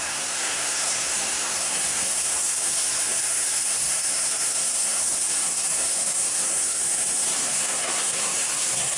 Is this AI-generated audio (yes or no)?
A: yes